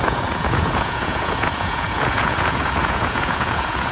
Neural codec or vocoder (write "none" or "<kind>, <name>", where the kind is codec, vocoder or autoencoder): vocoder, Vocos